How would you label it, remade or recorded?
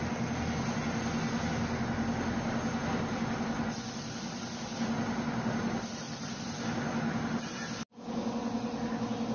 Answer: recorded